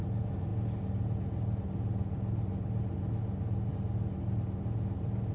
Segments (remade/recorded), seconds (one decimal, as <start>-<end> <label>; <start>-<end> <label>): 0.0-5.3 recorded